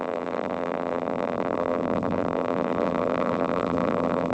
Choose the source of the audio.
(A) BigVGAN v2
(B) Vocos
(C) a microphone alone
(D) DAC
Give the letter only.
A